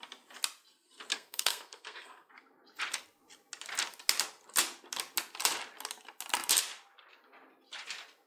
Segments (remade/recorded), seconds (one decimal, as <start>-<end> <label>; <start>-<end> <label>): 0.0-1.1 recorded; 1.1-2.3 remade; 2.3-8.3 recorded